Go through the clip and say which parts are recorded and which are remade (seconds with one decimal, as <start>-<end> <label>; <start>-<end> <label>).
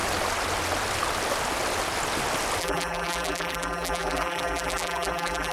0.0-2.6 recorded; 2.6-5.5 remade